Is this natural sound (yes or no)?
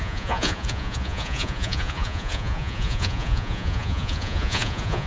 no